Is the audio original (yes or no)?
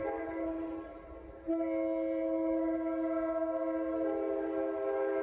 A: yes